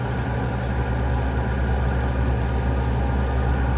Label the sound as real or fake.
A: real